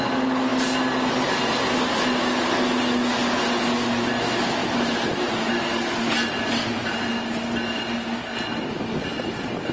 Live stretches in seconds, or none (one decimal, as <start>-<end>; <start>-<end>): 0.0-4.6; 5.6-9.7